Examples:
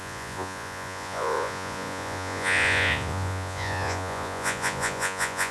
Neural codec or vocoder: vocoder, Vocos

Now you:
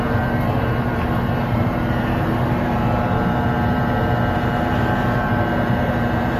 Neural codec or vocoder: vocoder, BigVGAN v2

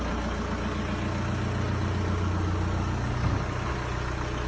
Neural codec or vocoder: none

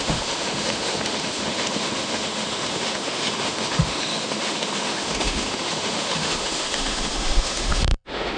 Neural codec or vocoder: autoencoder, DAC-VAE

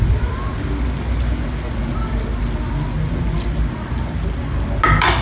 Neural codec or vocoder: none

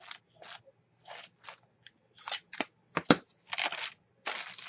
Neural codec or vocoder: none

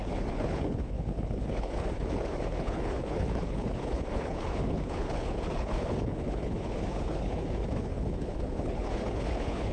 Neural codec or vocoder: codec, HILCodec